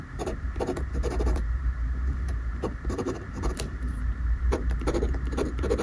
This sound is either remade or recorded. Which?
remade